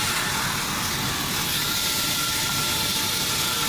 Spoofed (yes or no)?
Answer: no